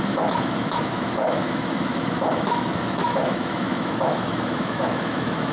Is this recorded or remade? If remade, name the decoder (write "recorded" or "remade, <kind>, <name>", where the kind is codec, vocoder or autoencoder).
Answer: remade, autoencoder, DAC-VAE